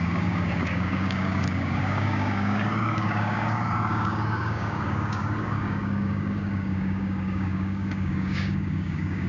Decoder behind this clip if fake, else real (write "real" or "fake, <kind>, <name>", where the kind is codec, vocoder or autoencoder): fake, codec, DAC